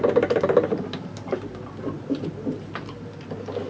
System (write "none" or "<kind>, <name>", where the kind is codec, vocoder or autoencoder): none